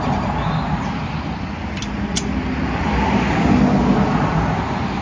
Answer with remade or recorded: recorded